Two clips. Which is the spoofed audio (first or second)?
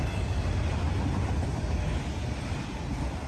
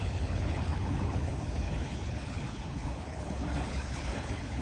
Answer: second